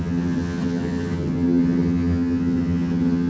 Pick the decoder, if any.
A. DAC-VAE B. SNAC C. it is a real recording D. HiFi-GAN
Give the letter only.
D